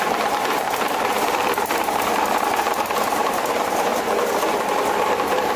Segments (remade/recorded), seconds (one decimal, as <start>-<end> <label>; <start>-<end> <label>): 0.0-3.9 remade; 3.9-4.7 recorded; 4.7-5.6 remade